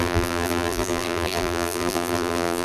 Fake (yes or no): yes